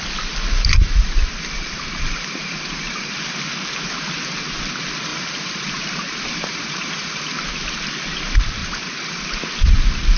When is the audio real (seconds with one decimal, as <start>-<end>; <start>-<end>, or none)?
0.0-0.8; 3.1-5.1; 7.5-8.6; 9.3-10.2